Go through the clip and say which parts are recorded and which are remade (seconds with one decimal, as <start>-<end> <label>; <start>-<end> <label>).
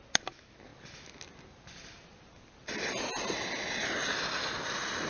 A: 0.0-5.1 recorded